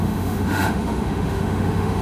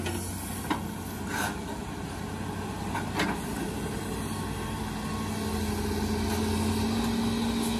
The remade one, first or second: first